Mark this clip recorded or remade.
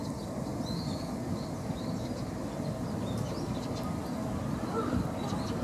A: recorded